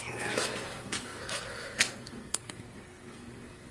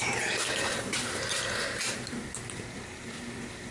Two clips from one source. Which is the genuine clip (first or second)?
second